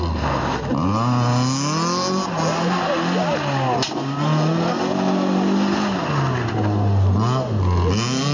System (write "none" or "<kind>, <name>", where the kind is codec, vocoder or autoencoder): none